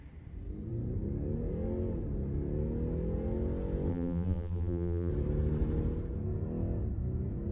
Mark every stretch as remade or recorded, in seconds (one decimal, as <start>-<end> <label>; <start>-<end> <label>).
0.0-3.9 recorded; 3.9-5.1 remade; 5.1-7.5 recorded